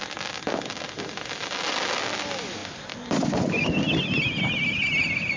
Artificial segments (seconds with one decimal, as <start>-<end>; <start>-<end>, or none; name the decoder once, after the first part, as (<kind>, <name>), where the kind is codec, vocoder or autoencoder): none

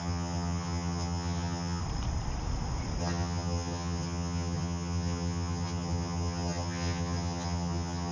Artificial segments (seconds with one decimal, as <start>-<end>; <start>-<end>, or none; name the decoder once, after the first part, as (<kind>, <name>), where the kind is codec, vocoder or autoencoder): 0.0-1.8 (vocoder, HiFi-GAN); 3.0-8.1

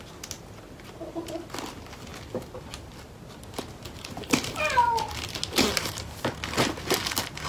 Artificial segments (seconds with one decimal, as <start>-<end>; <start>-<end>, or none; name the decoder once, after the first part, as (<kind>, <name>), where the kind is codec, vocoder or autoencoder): none

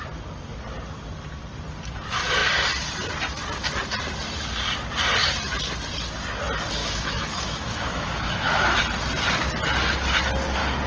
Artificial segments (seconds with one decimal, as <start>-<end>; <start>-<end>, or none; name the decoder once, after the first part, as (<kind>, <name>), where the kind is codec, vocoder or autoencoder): 6.8-8.8 (autoencoder, DAC-VAE)

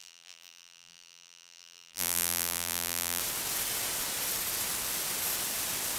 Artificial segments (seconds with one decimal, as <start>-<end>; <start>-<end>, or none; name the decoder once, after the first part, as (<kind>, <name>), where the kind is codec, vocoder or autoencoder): 0.0-3.2 (vocoder, BigVGAN v2)

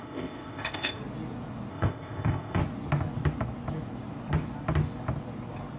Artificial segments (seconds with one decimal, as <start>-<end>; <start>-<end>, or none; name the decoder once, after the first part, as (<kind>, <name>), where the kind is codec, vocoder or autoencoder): 0.0-1.0 (codec, ZipCodec); 1.7-2.6

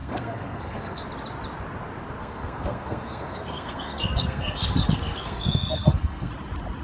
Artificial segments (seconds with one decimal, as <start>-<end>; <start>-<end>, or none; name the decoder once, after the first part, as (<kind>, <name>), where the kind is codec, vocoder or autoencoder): 0.0-1.0 (codec, SNAC); 2.2-6.3

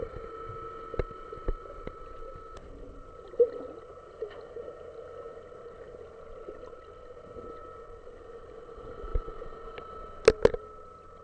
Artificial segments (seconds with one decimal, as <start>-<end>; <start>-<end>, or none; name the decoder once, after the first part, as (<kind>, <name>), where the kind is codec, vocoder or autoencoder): none